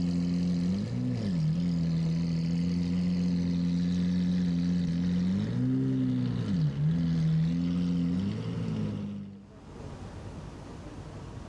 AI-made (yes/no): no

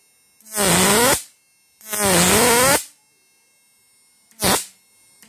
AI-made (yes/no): no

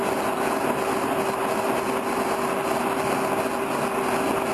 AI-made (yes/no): no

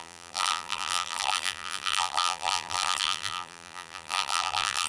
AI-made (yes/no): yes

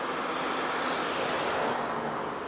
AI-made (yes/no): no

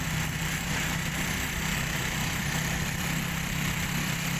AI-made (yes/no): yes